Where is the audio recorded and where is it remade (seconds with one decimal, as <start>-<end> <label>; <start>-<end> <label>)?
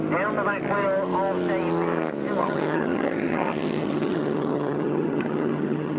0.0-2.4 recorded; 2.4-6.0 remade